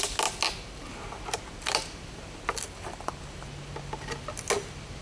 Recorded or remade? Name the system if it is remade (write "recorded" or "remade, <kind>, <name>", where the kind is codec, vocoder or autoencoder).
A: recorded